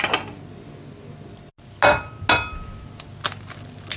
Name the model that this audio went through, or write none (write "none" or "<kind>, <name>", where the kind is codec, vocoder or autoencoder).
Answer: none